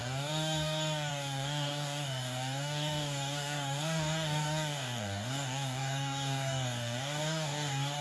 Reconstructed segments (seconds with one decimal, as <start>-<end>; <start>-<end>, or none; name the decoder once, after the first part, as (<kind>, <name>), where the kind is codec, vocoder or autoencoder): 0.0-8.0 (codec, DAC)